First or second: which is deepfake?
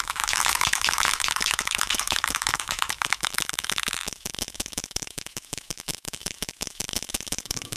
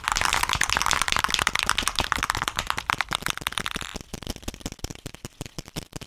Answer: first